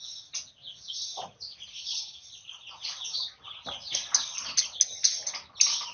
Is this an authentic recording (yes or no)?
yes